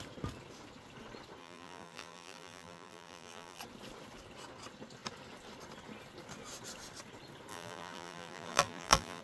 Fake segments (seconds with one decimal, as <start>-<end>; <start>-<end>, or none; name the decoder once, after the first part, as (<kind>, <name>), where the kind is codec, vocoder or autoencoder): 1.4-3.6 (vocoder, BigVGAN v2); 7.5-9.2